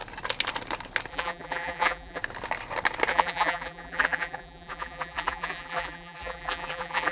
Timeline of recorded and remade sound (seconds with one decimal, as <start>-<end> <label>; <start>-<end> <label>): 0.0-1.1 recorded; 1.1-2.2 remade; 2.2-3.1 recorded; 3.1-7.1 remade